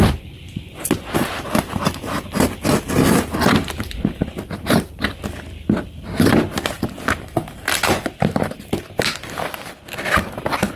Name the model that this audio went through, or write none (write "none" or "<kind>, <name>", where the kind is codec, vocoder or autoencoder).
vocoder, BigVGAN v2